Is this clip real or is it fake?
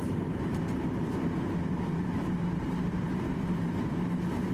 fake